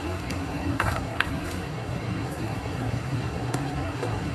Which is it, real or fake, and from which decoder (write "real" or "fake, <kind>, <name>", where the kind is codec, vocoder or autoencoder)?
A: fake, codec, SNAC